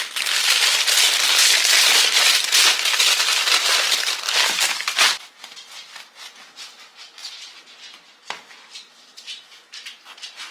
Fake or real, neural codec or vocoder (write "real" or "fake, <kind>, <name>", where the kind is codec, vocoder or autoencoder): real